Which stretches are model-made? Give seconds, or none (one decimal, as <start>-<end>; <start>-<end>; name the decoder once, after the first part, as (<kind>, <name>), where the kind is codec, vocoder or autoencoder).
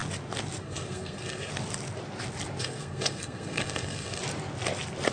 0.6-1.5 (codec, SNAC); 2.6-4.2